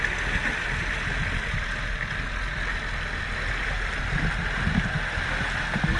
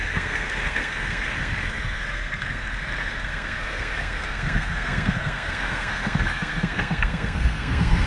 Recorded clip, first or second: first